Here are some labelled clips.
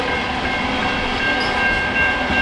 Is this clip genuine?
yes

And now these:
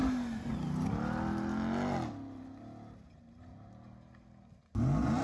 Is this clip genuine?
yes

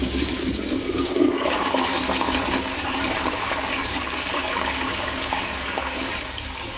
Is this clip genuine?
no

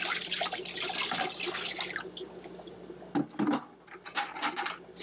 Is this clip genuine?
yes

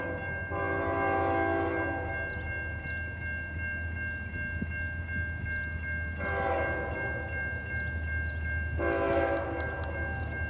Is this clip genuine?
yes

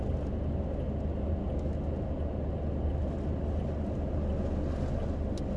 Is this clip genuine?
yes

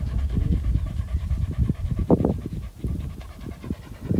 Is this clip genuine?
no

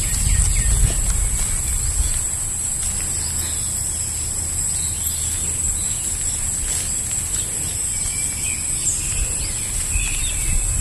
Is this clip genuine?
yes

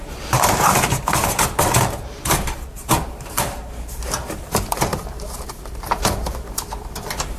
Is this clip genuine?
no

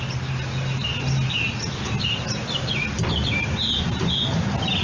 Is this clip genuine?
yes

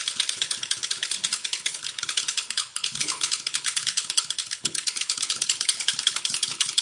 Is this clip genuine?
no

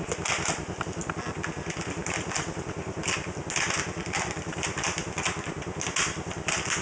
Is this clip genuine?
yes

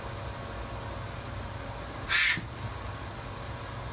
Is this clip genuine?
yes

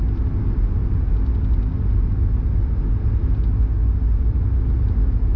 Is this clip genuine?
yes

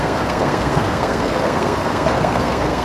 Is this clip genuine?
no